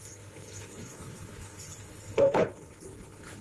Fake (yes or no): yes